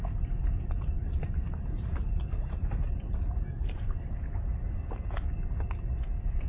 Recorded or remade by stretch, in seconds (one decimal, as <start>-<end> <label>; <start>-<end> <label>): 0.0-1.0 recorded; 1.0-4.5 remade; 4.5-6.5 recorded